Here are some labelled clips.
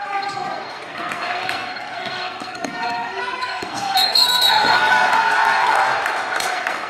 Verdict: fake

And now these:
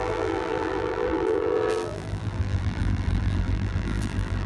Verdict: fake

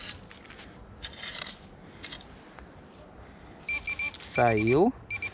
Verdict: real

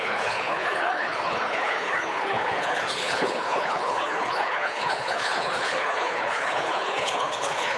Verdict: fake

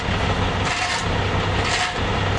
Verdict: real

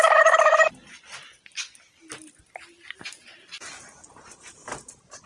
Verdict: real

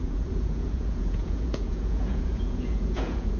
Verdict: fake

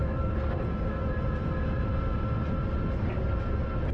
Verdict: real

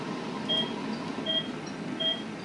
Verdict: fake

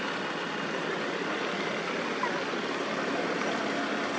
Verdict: real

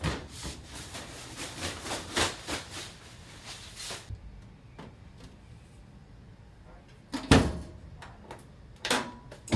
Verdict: fake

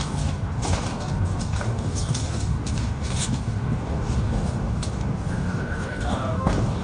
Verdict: fake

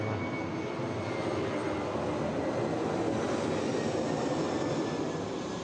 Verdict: real